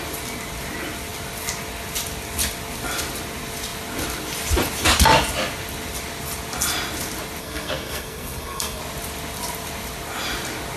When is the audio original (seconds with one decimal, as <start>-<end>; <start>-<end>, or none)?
0.0-7.4; 8.8-10.8